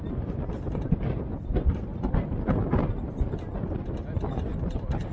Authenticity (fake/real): real